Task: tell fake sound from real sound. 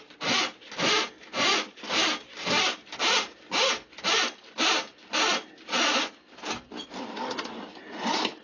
real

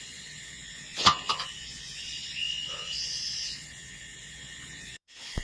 fake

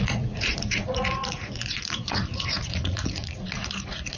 fake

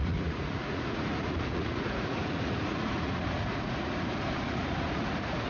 fake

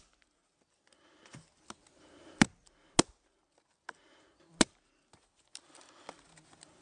real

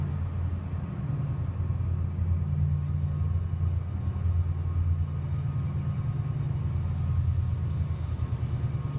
real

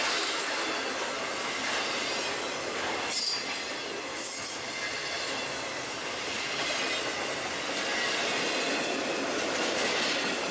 real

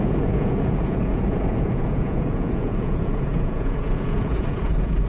fake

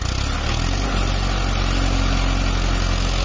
real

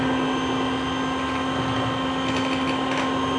real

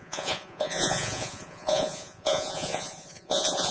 fake